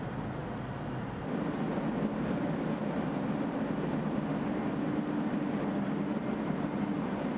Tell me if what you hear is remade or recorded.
recorded